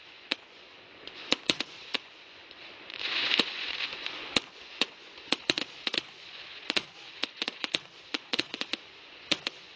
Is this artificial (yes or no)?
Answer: yes